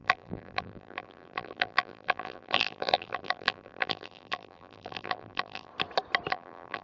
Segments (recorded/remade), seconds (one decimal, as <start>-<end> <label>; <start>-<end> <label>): 0.0-5.7 remade; 5.7-6.3 recorded; 6.3-6.8 remade